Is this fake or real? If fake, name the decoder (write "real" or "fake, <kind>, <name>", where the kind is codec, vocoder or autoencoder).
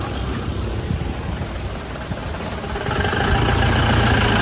real